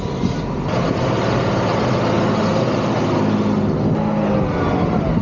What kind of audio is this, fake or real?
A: real